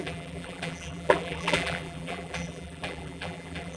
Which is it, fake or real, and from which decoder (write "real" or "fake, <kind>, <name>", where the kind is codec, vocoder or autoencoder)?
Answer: fake, vocoder, BigVGAN v2